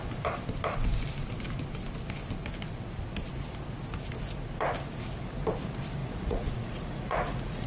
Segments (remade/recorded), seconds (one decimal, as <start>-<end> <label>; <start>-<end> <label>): 0.0-6.0 recorded; 6.0-7.7 remade